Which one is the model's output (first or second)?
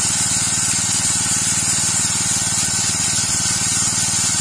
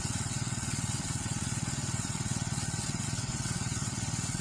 second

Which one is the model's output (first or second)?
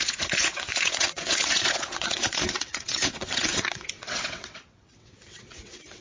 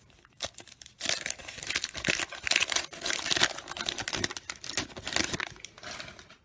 first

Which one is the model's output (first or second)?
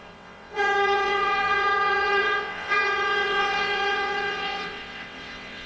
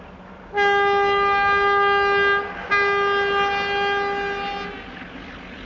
first